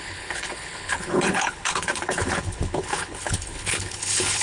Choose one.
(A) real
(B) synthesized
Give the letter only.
B